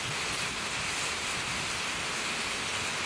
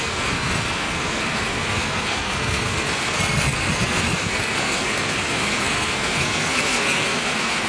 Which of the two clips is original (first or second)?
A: first